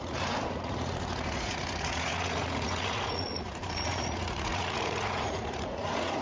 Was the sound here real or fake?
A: fake